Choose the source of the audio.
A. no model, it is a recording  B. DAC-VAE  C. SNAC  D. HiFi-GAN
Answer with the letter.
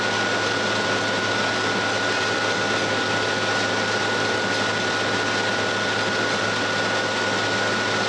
A